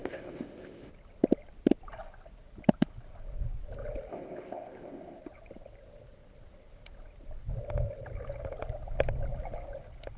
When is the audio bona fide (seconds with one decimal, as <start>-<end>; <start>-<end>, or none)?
0.9-4.1; 5.2-10.2